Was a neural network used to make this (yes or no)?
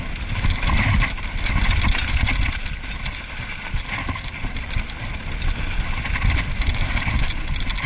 no